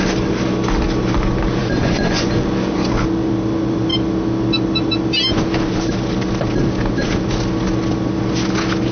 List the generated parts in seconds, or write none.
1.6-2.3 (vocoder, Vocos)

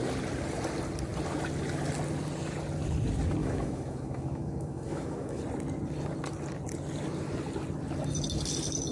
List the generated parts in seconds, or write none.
3.4-5.4 (autoencoder, DAC-VAE)

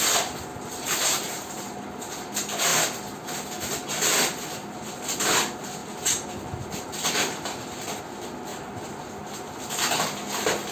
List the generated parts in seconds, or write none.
0.5-1.7 (vocoder, BigVGAN v2); 8.5-9.0

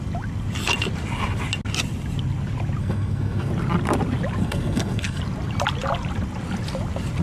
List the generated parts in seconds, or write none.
2.8-3.5 (codec, SNAC); 4.4-5.2

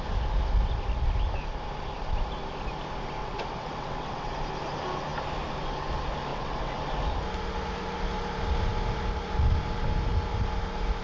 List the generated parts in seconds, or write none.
3.2-4.3 (vocoder, WaveNeXt); 6.3-6.8

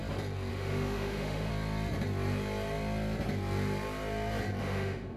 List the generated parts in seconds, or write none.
0.5-1.5 (autoencoder, DAC-VAE); 4.6-5.2

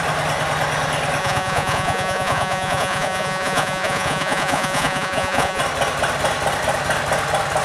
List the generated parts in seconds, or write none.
1.2-5.6 (vocoder, Vocos)